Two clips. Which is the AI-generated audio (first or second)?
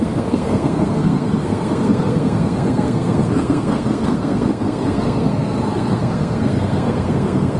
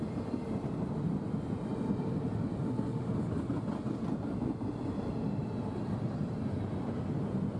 first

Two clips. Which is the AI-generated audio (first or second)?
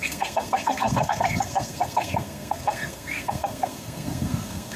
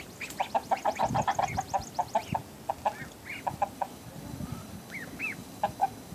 first